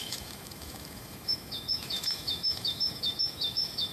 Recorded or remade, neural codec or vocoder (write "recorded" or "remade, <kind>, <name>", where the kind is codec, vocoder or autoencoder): remade, autoencoder, DAC-VAE